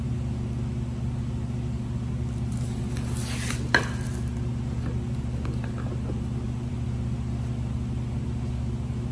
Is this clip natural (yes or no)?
yes